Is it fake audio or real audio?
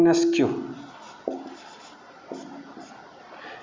real